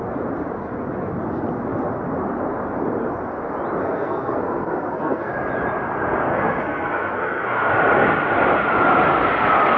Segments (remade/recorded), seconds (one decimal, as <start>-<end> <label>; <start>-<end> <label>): 0.0-3.8 recorded; 3.8-5.3 remade; 5.3-6.3 recorded; 6.3-7.7 remade; 7.7-9.8 recorded